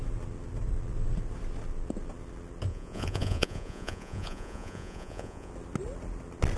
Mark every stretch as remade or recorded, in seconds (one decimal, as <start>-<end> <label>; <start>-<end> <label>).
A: 0.0-2.7 recorded; 2.7-5.5 remade; 5.5-6.6 recorded